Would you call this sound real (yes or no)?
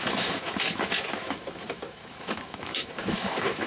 no